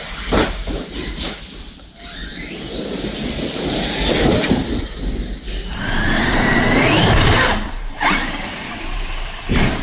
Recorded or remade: remade